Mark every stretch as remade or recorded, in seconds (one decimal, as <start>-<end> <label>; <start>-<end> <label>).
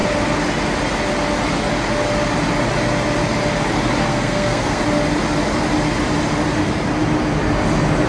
0.0-4.1 recorded; 4.1-4.8 remade; 4.8-8.1 recorded